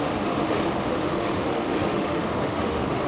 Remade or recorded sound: remade